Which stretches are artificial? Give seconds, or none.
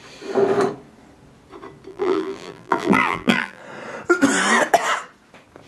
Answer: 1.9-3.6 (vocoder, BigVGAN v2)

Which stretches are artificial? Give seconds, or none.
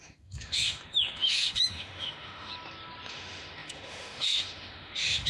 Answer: 0.0-2.5 (autoencoder, DAC-VAE); 3.1-5.3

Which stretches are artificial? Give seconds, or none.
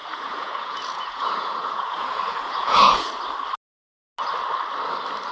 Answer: 0.0-3.2 (vocoder, Vocos)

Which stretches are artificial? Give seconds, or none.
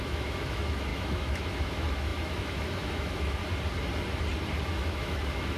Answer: 0.0-3.4 (autoencoder, DAC-VAE); 4.8-5.6